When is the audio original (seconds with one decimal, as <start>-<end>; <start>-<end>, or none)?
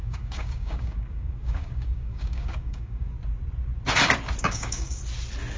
3.1-4.4; 5.0-5.6